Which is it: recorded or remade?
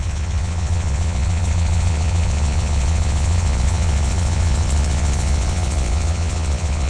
remade